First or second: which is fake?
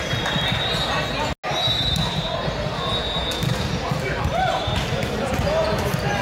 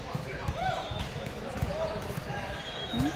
second